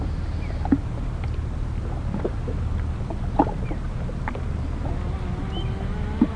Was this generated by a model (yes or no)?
no